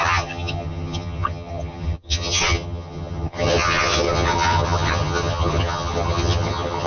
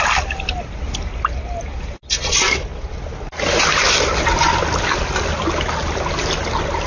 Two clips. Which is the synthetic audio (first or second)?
first